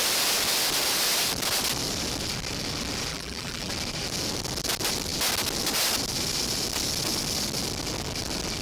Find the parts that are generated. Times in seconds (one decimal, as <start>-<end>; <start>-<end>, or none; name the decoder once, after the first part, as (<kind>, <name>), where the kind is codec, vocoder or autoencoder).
3.1-3.7 (vocoder, BigVGAN v2)

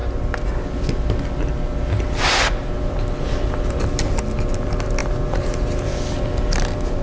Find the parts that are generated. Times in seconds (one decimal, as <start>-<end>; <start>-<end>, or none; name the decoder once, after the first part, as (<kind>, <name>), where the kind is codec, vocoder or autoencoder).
none